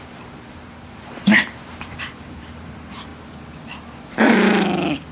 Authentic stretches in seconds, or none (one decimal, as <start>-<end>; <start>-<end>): 3.1-4.1